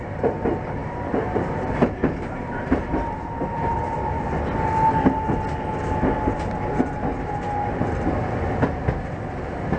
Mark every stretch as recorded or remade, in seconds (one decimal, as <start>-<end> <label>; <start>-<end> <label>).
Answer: 0.0-0.8 recorded; 0.8-4.2 remade; 4.2-9.8 recorded